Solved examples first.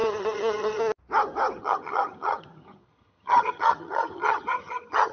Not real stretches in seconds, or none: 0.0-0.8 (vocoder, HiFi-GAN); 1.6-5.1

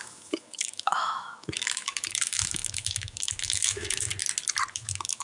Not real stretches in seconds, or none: 0.0-4.1 (autoencoder, DAC-VAE); 4.7-5.2